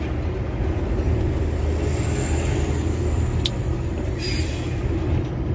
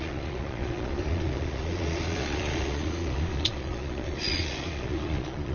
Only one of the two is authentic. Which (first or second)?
first